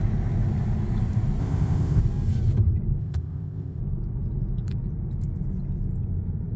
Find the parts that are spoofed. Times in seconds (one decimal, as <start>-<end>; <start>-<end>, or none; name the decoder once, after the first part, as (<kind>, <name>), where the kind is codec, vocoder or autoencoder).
1.4-2.0 (codec, ZipCodec); 3.0-3.8